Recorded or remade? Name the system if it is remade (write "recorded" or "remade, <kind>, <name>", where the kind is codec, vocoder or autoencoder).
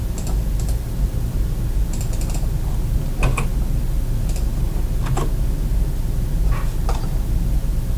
remade, vocoder, BigVGAN v2